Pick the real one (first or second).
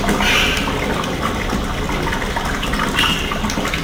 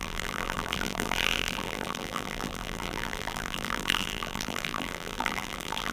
first